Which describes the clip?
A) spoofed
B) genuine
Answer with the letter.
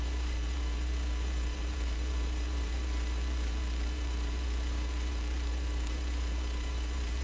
A